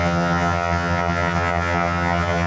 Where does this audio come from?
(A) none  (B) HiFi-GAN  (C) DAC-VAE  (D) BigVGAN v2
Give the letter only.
B